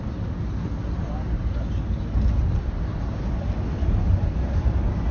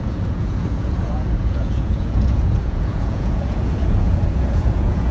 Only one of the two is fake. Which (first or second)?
second